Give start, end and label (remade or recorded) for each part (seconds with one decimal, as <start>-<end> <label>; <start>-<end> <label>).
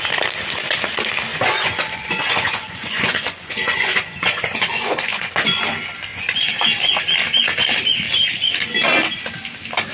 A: 0.0-1.3 recorded; 1.3-5.6 remade; 5.6-6.1 recorded; 6.1-6.6 remade; 6.6-9.9 recorded